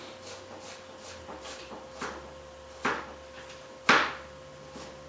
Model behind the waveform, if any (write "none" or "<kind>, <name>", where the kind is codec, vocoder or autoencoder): none